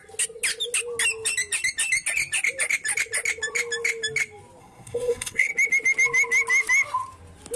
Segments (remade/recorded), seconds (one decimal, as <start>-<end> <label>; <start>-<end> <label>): 0.0-4.6 recorded; 4.6-5.5 remade; 5.5-7.6 recorded